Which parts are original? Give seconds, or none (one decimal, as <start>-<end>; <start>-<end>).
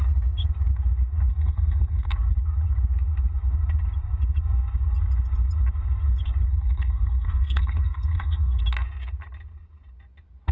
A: 0.0-1.3; 2.1-6.5; 8.6-10.5